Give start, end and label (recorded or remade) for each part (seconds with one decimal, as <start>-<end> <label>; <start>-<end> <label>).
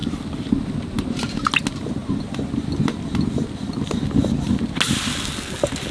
0.0-5.9 recorded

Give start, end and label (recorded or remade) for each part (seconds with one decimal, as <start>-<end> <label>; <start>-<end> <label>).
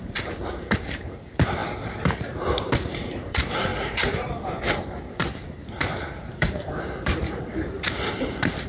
0.0-8.7 remade